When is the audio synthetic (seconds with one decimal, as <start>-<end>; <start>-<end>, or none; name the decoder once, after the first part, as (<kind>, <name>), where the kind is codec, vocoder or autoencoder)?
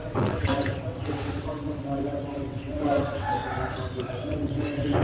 0.0-3.4 (vocoder, WaveNeXt); 4.0-5.0